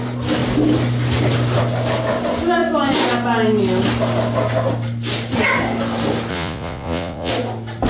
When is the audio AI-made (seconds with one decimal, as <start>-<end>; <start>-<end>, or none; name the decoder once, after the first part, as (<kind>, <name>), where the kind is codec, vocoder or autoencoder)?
6.3-7.3 (vocoder, Vocos)